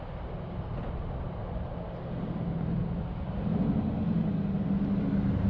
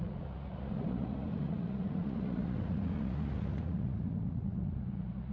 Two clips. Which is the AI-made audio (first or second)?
second